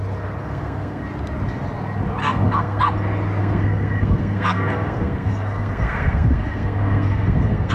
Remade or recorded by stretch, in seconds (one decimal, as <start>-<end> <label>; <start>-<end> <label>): 0.0-0.4 recorded; 0.4-1.0 remade; 1.0-2.2 recorded; 2.2-2.8 remade; 2.8-3.4 recorded; 3.4-7.7 remade